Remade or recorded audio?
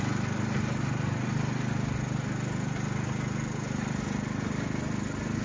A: recorded